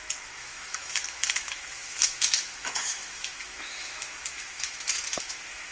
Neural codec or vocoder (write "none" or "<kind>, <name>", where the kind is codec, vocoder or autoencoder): autoencoder, DAC-VAE